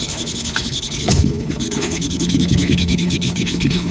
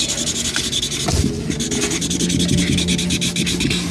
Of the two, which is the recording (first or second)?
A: second